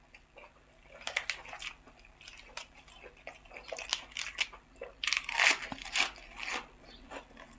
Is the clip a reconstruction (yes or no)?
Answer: no